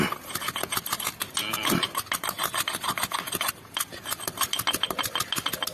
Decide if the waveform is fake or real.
real